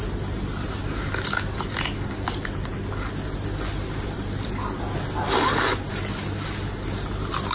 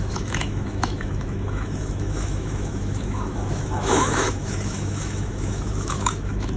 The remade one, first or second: second